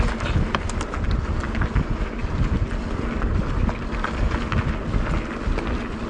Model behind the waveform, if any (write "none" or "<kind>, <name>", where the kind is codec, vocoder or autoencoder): none